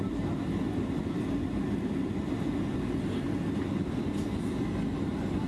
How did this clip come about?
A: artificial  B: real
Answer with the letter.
B